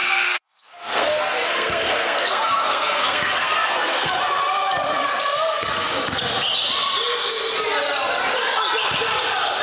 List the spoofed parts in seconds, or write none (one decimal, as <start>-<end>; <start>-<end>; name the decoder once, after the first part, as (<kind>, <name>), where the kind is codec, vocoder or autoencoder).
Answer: 0.0-4.1 (codec, SNAC); 5.2-5.7